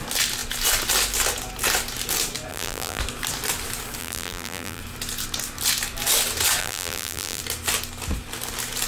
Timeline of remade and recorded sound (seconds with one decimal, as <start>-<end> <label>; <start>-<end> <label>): 0.0-2.5 recorded; 2.5-3.0 remade; 3.0-4.0 recorded; 4.0-4.8 remade; 4.8-6.6 recorded; 6.6-7.4 remade; 7.4-8.9 recorded